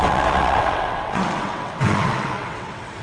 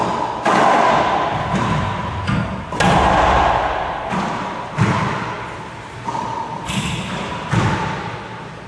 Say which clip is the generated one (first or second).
first